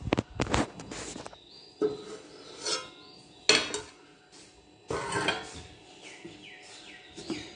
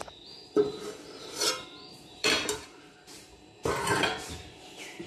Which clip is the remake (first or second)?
second